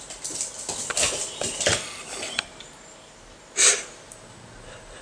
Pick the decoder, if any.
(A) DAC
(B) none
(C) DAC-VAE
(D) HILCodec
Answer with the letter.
B